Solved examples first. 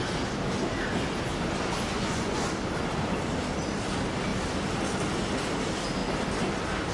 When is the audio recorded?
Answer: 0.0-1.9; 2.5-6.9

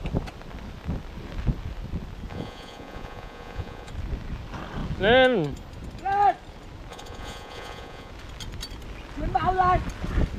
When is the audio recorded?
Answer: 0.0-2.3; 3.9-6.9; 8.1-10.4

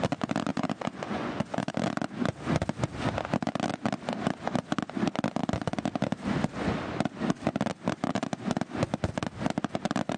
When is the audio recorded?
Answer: 0.0-0.5; 1.7-10.2